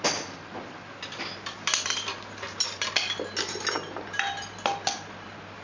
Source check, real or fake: real